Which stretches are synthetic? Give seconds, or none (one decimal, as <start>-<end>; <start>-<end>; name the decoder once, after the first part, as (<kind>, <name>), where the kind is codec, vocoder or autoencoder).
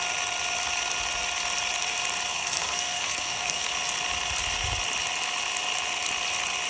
2.3-3.7 (codec, SNAC)